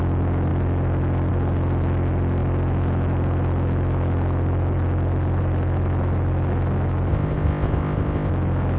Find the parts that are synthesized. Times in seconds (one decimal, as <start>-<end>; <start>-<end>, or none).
7.1-8.3